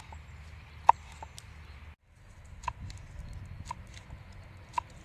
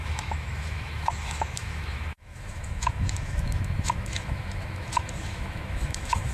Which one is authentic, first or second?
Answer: first